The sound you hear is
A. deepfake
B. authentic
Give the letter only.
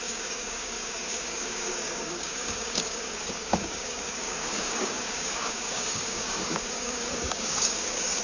A